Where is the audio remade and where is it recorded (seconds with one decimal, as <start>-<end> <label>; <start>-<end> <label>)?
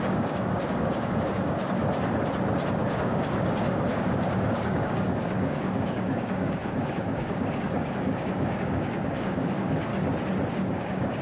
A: 0.0-1.8 remade; 1.8-2.7 recorded; 2.7-9.9 remade; 9.9-10.5 recorded; 10.5-11.2 remade